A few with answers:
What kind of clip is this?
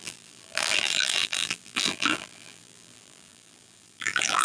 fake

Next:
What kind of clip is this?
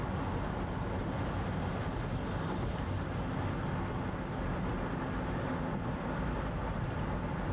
real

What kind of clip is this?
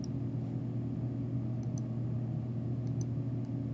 real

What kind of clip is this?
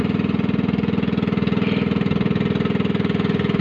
real